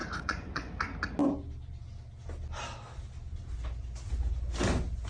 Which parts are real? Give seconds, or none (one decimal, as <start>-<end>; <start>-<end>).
0.7-5.1